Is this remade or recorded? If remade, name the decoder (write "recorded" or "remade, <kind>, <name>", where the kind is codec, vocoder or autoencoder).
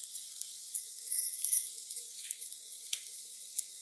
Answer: remade, codec, SNAC